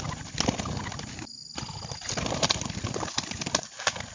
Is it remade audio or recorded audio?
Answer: recorded